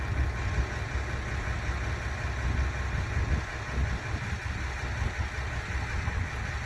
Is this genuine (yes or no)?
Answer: yes